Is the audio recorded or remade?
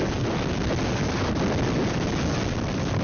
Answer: recorded